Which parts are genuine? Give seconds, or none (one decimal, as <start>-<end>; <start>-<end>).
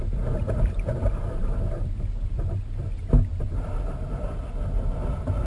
0.0-5.5